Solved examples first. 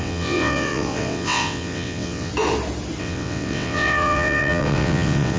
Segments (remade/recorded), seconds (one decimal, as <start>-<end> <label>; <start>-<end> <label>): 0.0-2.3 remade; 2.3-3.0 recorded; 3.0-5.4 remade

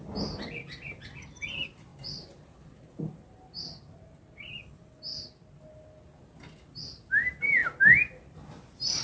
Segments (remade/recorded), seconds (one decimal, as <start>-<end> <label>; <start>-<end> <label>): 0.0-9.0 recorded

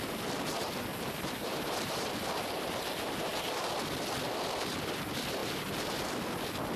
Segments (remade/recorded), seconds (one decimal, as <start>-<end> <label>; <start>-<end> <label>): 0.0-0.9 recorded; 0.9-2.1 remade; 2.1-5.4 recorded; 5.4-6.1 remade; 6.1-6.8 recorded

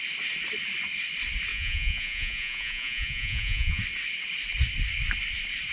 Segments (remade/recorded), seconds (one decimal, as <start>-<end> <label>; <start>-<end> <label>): 0.0-1.5 recorded; 1.5-3.8 remade; 3.8-5.7 recorded